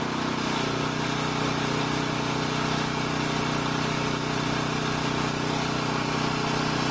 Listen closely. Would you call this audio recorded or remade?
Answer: recorded